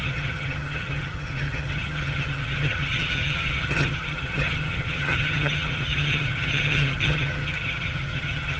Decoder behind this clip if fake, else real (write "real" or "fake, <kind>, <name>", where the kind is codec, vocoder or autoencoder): fake, vocoder, HiFi-GAN